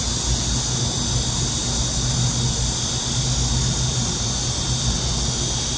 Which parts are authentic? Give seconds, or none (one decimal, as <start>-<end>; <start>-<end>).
0.0-5.8